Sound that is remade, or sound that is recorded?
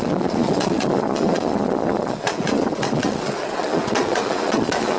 remade